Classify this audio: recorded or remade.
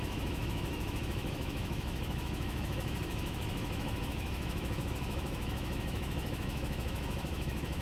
remade